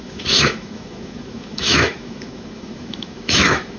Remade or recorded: remade